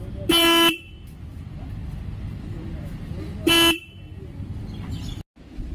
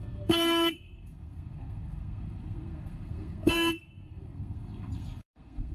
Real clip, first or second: first